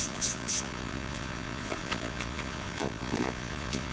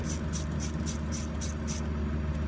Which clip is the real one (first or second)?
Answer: second